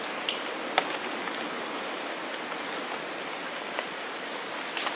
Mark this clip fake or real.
fake